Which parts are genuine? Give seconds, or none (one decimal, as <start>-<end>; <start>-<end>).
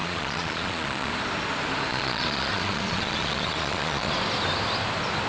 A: 1.1-1.9; 4.1-5.3